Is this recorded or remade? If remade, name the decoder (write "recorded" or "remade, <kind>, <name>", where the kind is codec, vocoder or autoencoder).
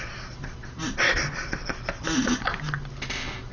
recorded